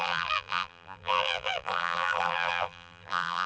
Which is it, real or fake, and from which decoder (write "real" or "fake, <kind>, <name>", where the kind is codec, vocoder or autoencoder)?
fake, vocoder, BigVGAN v2